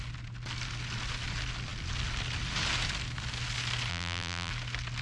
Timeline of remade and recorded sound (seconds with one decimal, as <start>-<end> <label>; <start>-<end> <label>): 0.0-3.9 recorded; 3.9-4.5 remade; 4.5-5.0 recorded